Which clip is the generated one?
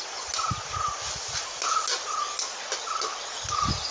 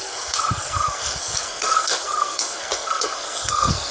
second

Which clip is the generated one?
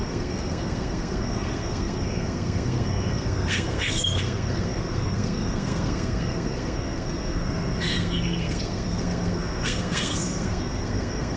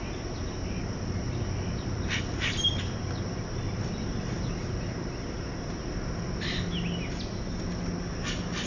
first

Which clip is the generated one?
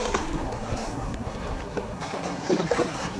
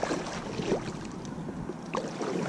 first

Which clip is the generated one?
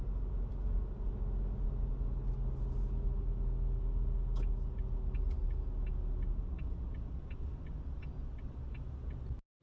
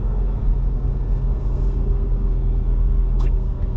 second